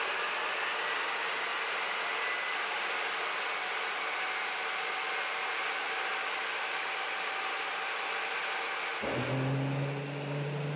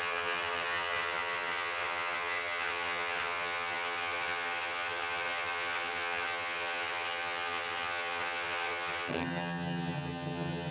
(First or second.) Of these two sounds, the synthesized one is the second